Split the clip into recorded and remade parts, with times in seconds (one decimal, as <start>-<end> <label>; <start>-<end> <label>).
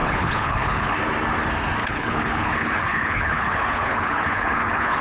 0.0-1.0 remade; 1.0-1.8 recorded; 1.8-5.0 remade